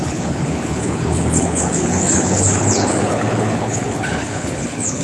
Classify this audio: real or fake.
fake